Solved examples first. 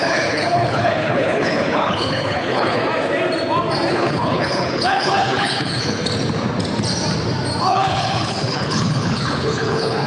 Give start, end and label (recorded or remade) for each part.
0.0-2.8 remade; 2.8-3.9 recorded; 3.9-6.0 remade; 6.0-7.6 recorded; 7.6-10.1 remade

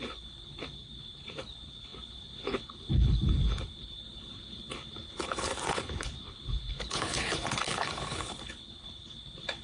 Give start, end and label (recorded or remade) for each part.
0.0-9.6 remade

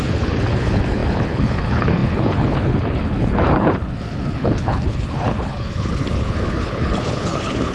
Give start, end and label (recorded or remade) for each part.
0.0-7.7 remade

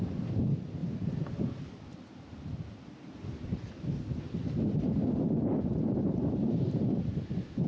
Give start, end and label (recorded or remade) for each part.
0.0-7.7 recorded